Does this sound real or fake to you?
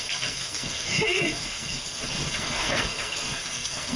fake